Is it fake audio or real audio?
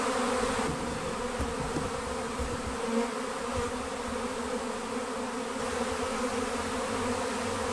real